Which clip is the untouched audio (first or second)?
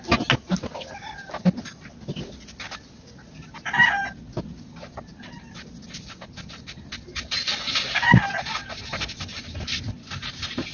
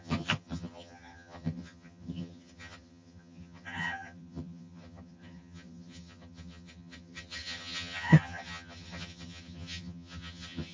first